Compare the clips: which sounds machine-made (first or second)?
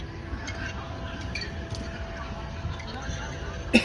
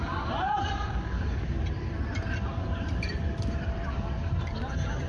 second